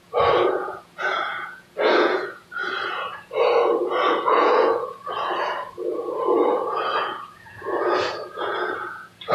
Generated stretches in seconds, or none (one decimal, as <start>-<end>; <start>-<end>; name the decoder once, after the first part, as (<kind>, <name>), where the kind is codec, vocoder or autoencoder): 0.0-9.3 (vocoder, Vocos)